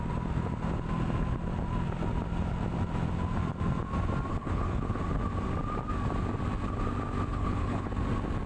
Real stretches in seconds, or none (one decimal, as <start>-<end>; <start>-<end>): 0.0-4.3; 5.0-7.3; 7.9-8.5